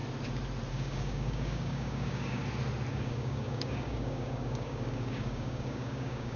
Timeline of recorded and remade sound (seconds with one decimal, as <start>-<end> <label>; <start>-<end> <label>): 0.0-0.7 recorded; 0.7-2.4 remade; 2.4-2.9 recorded; 2.9-6.4 remade